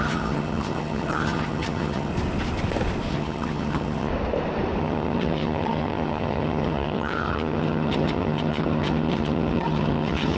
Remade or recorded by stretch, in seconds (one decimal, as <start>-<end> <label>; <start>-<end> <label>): 0.0-2.1 remade; 2.1-3.1 recorded; 3.1-4.1 remade; 4.1-4.8 recorded; 4.8-10.4 remade